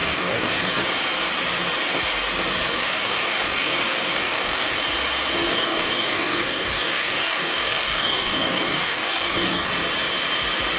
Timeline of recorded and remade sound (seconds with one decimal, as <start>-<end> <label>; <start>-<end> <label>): 0.0-0.7 remade; 0.7-2.7 recorded; 2.7-4.8 remade; 4.8-5.5 recorded; 5.5-9.7 remade; 9.7-10.8 recorded